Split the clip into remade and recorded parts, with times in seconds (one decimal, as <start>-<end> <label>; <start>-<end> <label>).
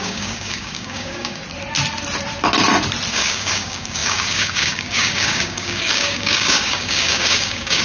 0.0-1.4 remade; 1.4-3.1 recorded; 3.1-7.8 remade